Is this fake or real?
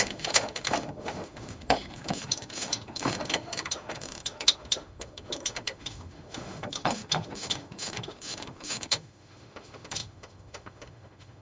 fake